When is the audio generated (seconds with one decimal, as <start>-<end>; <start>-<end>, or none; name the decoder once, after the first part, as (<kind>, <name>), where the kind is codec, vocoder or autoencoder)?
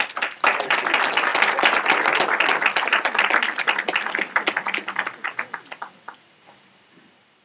0.0-1.3 (vocoder, BigVGAN v2); 3.3-7.4